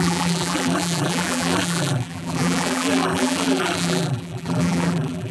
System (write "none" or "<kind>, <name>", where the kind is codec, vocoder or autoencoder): vocoder, BigVGAN v2